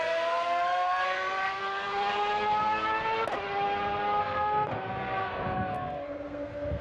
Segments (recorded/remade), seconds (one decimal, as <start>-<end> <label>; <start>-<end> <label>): 0.0-1.6 remade; 1.6-4.2 recorded; 4.2-6.8 remade